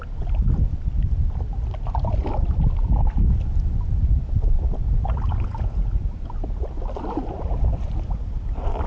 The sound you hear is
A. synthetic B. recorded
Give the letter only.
A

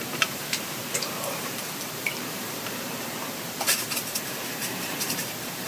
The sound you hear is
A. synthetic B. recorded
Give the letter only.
A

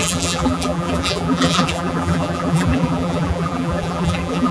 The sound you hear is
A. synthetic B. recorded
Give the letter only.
A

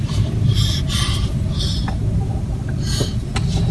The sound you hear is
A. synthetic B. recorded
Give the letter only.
A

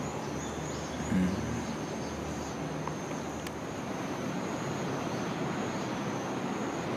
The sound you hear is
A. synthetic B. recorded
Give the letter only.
B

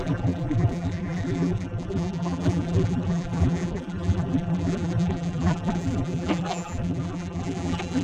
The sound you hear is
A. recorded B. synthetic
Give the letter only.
B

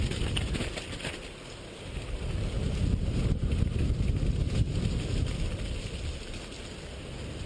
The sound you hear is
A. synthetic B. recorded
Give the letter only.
B